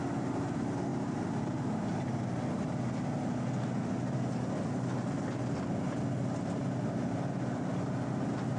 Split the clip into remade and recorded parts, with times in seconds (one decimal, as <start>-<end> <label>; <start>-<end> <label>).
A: 0.0-8.6 recorded